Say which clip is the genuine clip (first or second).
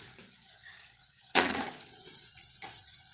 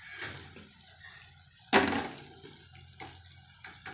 second